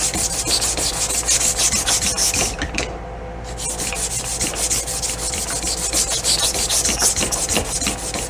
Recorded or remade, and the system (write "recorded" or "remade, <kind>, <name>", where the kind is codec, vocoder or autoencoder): recorded